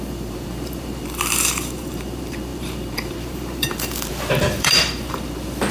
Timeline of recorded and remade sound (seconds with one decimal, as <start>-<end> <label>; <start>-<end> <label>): 0.0-5.7 remade